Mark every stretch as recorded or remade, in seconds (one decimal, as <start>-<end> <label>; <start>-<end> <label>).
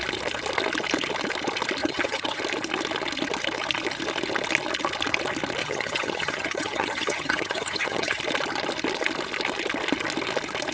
0.0-1.8 recorded; 1.8-2.4 remade; 2.4-5.6 recorded; 5.6-8.2 remade; 8.2-10.7 recorded